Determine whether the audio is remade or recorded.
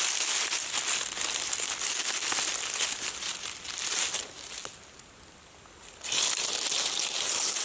recorded